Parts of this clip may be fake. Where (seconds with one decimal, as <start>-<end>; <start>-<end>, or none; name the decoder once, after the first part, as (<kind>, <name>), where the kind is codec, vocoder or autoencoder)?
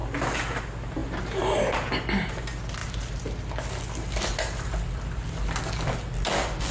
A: 0.0-0.6 (vocoder, BigVGAN v2); 1.0-1.6; 2.8-5.6